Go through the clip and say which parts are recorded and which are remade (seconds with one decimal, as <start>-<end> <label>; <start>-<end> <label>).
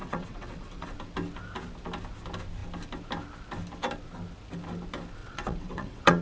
0.0-0.9 remade; 0.9-5.2 recorded; 5.2-6.2 remade